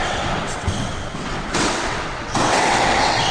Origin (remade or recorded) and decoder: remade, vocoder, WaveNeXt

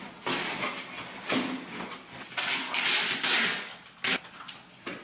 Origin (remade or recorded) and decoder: recorded